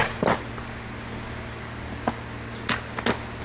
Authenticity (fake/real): real